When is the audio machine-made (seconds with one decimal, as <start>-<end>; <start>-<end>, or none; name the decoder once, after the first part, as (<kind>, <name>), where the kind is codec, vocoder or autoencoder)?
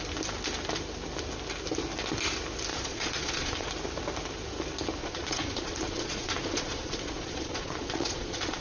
2.7-3.7 (vocoder, Vocos); 5.0-8.6